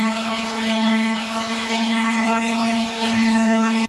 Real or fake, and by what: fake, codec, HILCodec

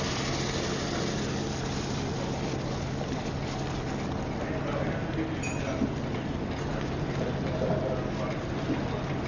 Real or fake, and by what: real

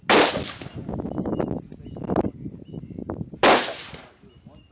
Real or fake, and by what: real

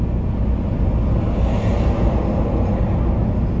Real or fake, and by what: real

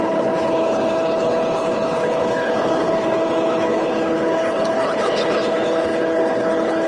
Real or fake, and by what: fake, codec, HILCodec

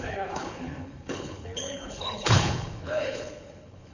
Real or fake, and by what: fake, codec, HILCodec